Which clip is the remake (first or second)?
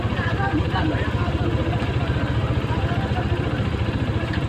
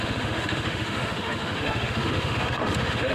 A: second